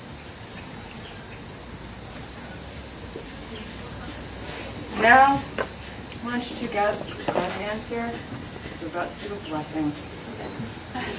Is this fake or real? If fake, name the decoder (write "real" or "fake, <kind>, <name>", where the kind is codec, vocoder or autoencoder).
real